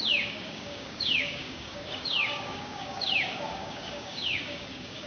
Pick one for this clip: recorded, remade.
remade